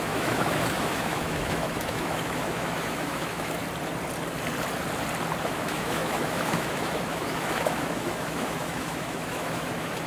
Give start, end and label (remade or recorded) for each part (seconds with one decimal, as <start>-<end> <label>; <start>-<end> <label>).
0.0-3.6 remade; 3.6-5.4 recorded; 5.4-10.1 remade